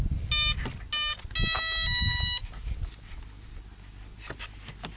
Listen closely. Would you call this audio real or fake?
real